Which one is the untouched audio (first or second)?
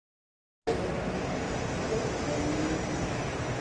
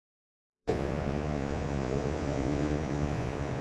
first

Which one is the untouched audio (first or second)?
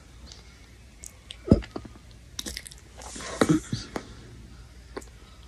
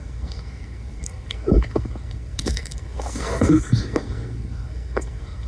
first